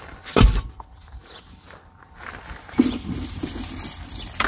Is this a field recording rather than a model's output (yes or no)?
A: yes